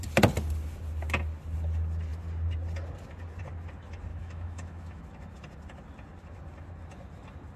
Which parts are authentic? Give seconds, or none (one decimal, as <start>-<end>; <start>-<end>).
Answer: 0.0-4.1; 5.0-7.6